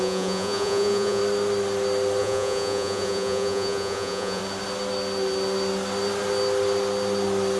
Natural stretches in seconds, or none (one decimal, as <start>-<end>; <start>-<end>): 1.2-2.2; 4.4-7.6

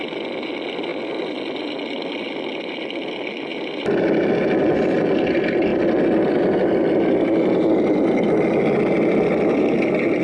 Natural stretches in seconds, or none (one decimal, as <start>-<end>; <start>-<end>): 0.0-10.2

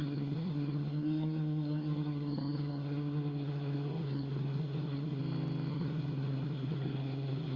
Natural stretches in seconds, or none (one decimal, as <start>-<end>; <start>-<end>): 5.2-5.7

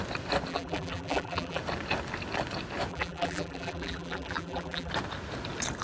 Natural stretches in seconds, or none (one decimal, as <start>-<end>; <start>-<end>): 0.0-0.5; 1.6-2.9; 4.9-5.8

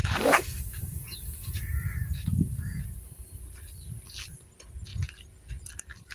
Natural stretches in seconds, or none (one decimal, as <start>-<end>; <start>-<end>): 2.8-6.1

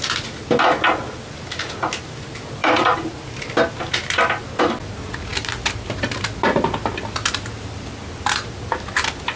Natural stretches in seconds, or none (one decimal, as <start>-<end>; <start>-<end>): 0.0-2.6; 3.8-5.3; 7.0-9.4

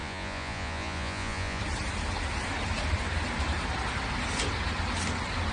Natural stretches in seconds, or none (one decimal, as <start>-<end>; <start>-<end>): 1.6-5.5